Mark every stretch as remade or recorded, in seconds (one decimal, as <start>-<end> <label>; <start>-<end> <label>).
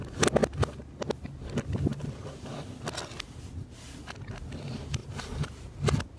0.0-6.2 recorded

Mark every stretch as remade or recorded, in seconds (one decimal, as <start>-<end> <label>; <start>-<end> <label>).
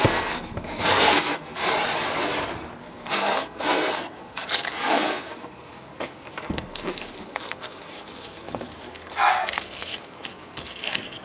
0.0-1.6 remade; 1.6-2.8 recorded; 2.8-11.2 remade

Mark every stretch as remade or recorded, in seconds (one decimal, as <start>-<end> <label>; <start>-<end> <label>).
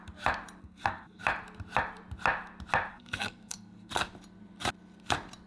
0.0-0.6 recorded; 0.6-1.2 remade; 1.2-2.9 recorded; 2.9-3.9 remade; 3.9-5.5 recorded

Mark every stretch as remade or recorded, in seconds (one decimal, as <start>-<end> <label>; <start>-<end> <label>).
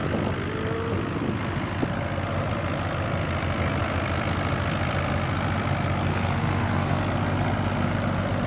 0.0-6.1 recorded; 6.1-7.0 remade; 7.0-8.5 recorded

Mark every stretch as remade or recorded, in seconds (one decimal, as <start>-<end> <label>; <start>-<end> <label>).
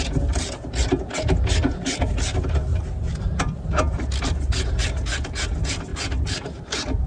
0.0-7.1 recorded